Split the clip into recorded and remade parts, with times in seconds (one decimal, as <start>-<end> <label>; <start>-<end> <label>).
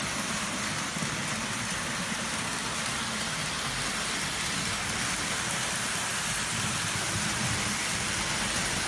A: 0.0-8.9 recorded